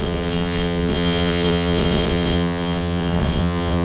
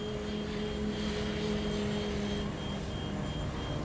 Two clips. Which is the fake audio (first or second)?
first